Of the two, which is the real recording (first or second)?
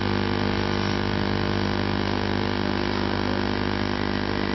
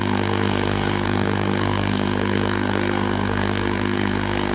first